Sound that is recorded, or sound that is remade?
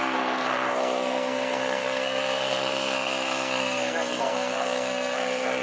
remade